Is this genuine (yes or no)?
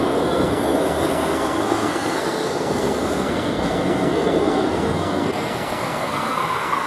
no